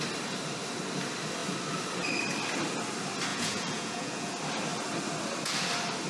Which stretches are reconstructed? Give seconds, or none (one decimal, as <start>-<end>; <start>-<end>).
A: 3.3-4.3